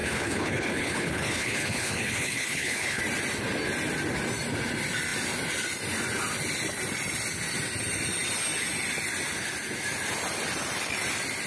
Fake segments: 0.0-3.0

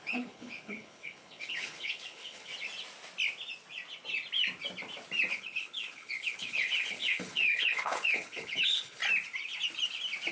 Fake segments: 0.0-2.5; 5.3-9.0

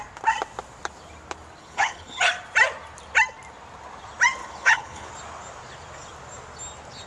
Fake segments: 1.6-2.2; 4.4-5.1

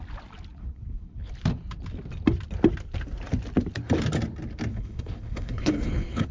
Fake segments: 0.6-1.3; 4.7-6.3

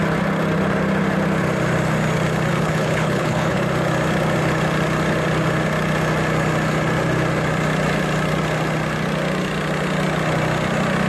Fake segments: 2.5-3.6

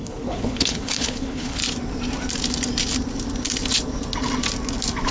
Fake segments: 0.0-1.6

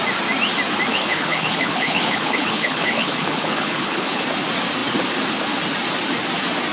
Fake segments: 0.9-4.2